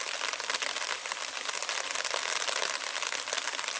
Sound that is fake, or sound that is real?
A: real